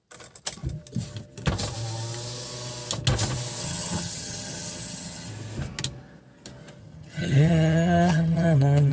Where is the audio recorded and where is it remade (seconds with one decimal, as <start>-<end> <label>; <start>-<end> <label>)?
0.0-3.6 recorded; 3.6-5.3 remade; 5.3-6.8 recorded; 6.8-8.9 remade